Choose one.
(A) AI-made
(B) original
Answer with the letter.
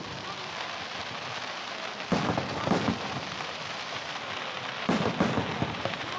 B